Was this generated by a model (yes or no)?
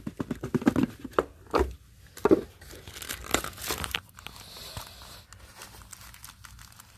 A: no